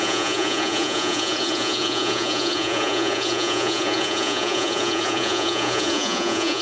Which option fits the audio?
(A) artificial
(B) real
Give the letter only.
A